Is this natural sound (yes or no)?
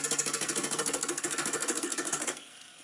no